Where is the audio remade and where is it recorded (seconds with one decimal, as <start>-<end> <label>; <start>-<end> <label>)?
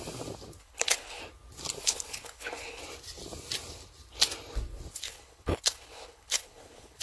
0.0-0.6 recorded; 0.6-1.2 remade; 1.2-1.8 recorded; 1.8-2.8 remade; 2.8-4.9 recorded; 4.9-7.0 remade